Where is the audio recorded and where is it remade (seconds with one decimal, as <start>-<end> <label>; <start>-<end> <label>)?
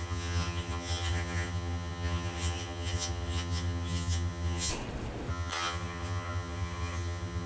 0.0-4.7 remade; 4.7-5.3 recorded; 5.3-7.5 remade